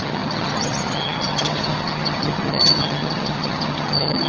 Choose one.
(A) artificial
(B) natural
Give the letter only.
A